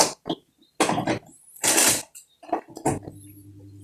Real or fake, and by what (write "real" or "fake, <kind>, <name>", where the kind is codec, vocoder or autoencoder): real